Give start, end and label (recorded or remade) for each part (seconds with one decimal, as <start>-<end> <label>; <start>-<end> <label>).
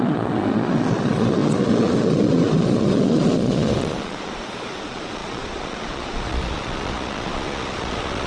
0.0-8.3 remade